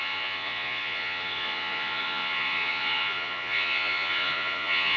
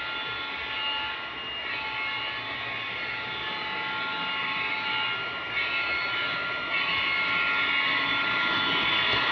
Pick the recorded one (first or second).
second